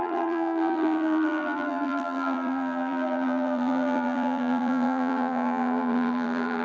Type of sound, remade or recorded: remade